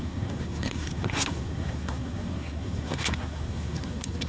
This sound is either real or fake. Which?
fake